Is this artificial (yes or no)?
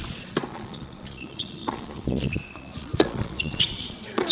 yes